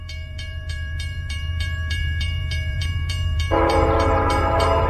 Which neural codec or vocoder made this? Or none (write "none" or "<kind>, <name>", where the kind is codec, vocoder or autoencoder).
vocoder, BigVGAN v2